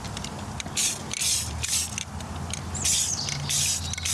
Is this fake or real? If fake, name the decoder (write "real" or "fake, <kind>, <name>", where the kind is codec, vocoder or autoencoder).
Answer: real